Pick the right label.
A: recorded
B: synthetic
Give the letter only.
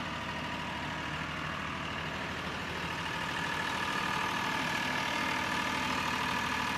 A